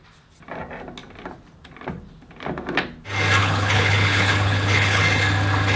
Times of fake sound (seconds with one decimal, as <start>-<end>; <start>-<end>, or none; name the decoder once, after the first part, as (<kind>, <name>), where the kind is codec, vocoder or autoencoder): 3.4-5.0 (codec, HILCodec)